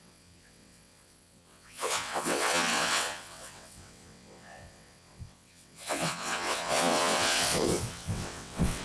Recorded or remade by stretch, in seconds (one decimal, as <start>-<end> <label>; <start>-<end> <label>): 0.0-8.8 remade